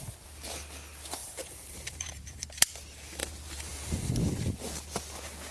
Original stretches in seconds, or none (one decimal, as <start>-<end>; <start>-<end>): 0.0-1.2; 2.7-3.2; 4.1-5.5